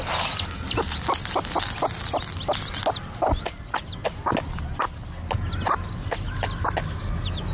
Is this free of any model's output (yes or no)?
yes